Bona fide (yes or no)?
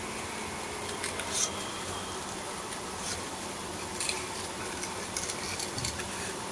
yes